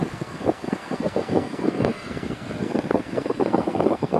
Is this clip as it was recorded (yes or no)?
no